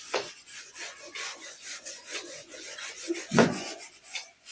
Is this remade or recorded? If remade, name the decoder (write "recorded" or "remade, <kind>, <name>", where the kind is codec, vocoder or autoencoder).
remade, vocoder, Vocos